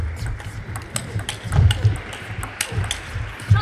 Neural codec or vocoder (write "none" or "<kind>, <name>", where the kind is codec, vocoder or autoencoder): none